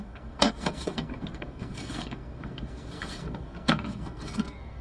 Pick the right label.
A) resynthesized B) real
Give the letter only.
A